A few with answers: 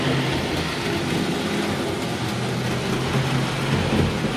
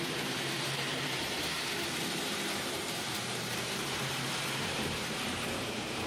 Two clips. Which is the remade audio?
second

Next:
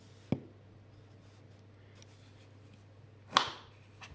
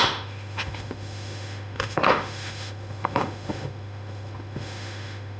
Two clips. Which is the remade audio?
second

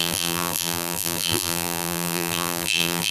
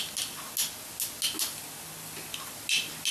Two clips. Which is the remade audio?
first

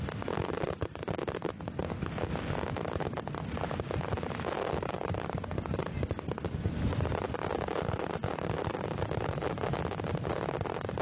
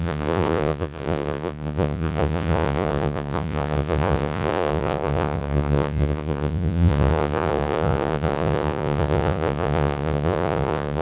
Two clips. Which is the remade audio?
second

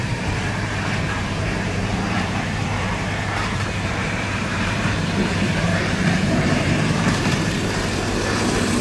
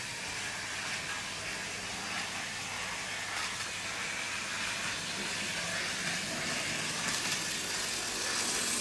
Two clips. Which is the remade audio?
first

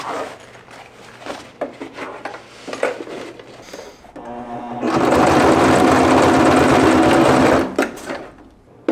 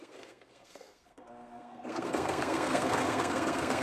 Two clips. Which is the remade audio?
second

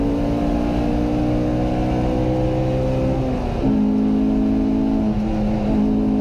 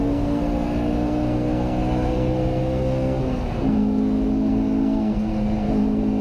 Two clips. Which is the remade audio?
second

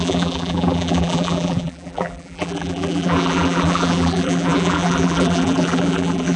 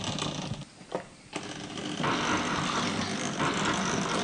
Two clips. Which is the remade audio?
first